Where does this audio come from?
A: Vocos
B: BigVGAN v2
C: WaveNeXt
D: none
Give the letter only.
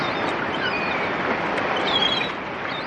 B